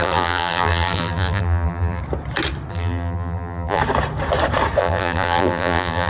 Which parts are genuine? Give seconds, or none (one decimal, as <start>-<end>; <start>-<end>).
2.0-2.7; 3.8-4.8